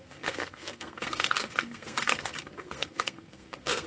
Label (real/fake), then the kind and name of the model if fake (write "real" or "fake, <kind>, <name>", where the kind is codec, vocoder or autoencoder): fake, codec, SNAC